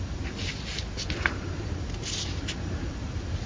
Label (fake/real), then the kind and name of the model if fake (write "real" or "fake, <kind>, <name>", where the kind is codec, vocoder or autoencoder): real